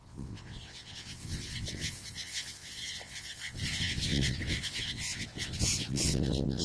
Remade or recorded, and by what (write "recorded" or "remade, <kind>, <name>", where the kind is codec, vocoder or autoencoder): remade, vocoder, WaveNeXt